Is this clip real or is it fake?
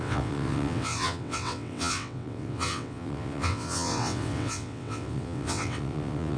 fake